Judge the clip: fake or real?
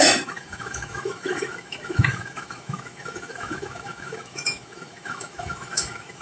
fake